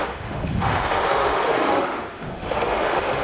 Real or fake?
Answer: fake